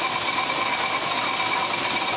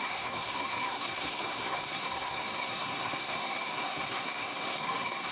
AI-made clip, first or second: second